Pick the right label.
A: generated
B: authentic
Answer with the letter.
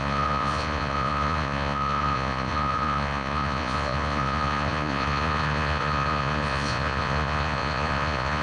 A